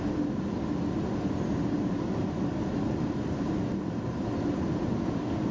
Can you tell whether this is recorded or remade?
recorded